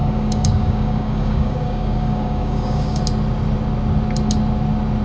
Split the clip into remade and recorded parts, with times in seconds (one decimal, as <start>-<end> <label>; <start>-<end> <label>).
0.0-3.0 remade; 3.0-5.0 recorded